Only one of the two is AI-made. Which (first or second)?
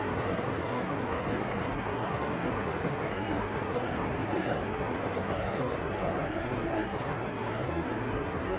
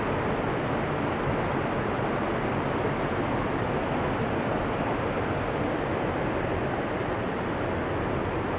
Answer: first